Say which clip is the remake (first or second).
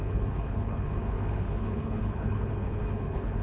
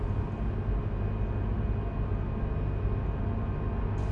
first